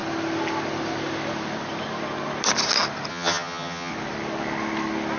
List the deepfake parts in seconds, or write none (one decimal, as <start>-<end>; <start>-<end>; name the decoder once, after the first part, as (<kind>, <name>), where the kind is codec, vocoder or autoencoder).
3.1-3.9 (vocoder, HiFi-GAN)